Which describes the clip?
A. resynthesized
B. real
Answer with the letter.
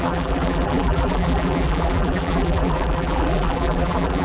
A